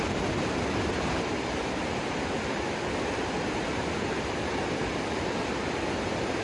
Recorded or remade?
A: recorded